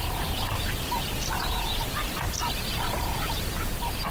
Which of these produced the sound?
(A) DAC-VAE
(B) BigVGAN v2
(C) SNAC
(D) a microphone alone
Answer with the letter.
D